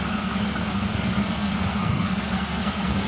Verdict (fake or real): fake